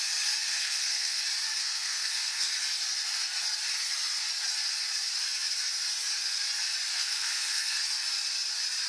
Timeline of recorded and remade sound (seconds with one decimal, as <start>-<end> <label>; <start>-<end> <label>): 0.0-0.4 recorded; 0.4-1.2 remade; 1.2-1.6 recorded; 1.6-2.5 remade; 2.5-6.9 recorded; 6.9-7.8 remade; 7.8-8.9 recorded